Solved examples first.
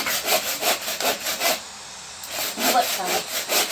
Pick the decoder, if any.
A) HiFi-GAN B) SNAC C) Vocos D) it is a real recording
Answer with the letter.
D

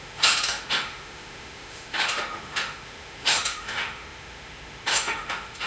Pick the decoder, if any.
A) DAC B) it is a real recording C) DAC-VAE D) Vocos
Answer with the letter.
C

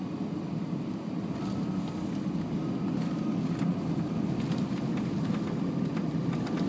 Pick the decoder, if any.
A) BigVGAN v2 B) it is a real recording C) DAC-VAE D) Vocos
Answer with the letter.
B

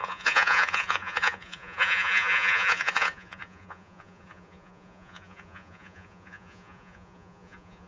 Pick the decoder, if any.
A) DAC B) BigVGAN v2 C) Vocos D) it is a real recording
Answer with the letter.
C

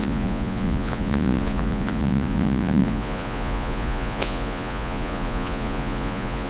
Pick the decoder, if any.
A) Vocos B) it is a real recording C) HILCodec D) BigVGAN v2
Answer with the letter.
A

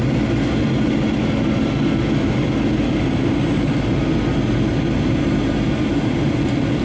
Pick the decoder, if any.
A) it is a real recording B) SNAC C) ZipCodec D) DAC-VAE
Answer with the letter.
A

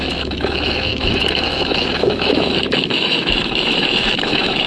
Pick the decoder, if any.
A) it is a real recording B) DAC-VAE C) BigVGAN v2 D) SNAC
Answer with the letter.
B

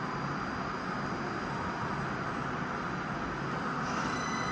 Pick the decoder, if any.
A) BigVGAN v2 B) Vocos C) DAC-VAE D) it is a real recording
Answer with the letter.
D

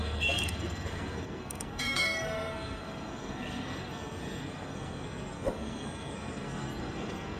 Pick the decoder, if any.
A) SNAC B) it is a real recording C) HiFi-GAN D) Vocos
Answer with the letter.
A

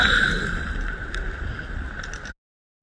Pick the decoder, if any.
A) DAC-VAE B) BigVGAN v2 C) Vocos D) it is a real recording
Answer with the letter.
D